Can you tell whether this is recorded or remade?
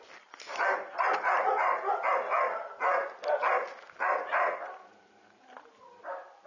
recorded